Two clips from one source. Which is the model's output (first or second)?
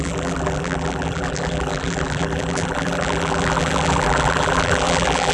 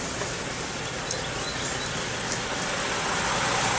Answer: first